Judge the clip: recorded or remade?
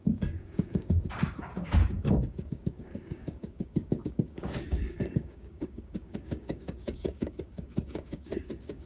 remade